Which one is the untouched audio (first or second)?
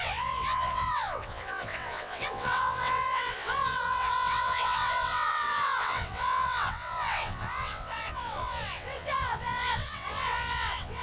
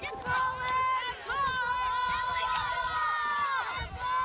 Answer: second